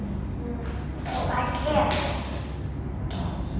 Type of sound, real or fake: real